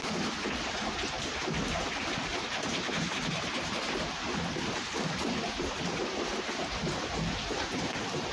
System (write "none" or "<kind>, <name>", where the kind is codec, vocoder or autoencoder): vocoder, BigVGAN v2